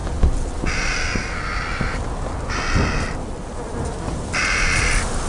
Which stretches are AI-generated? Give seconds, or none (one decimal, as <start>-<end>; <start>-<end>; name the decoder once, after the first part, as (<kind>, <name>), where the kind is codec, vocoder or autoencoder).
none